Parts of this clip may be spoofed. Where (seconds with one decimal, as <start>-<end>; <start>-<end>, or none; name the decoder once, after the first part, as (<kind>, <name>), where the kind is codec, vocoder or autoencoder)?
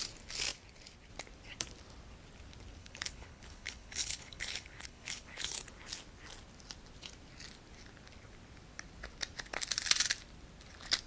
2.8-5.5 (codec, HILCodec)